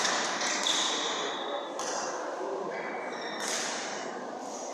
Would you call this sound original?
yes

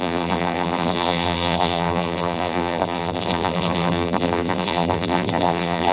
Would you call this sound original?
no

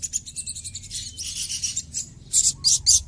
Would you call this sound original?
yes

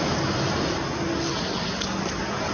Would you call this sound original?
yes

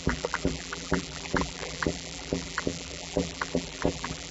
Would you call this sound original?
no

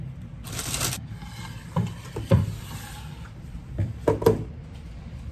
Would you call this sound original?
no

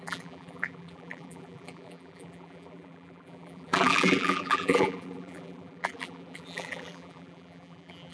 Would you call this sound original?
no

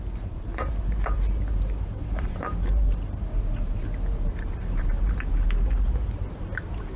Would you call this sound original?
no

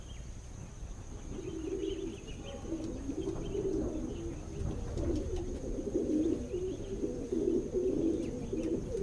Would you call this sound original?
yes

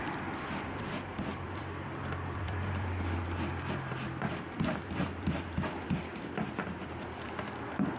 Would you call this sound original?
no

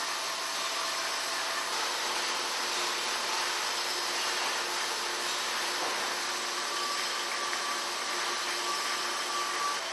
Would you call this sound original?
yes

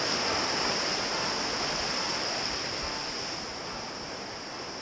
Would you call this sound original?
no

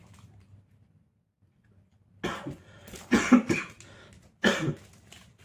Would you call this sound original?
yes